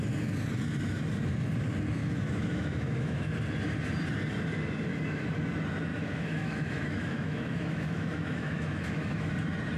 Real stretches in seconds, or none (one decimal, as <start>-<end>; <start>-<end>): 0.0-2.0; 3.3-5.9; 9.3-9.8